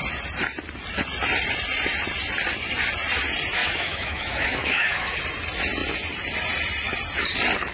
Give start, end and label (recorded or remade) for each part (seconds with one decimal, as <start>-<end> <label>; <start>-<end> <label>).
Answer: 0.0-3.6 recorded; 3.6-5.2 remade; 5.2-7.7 recorded